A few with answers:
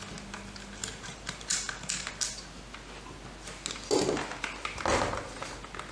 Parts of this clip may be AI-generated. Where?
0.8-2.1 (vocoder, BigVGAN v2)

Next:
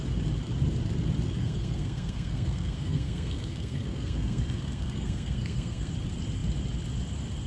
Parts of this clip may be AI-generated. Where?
1.4-5.9 (codec, SNAC)